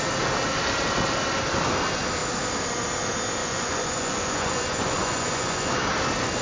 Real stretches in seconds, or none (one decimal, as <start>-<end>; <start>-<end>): 0.0-3.4; 5.7-6.4